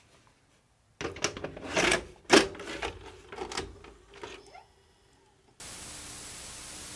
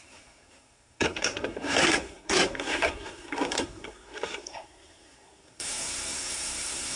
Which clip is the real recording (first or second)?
first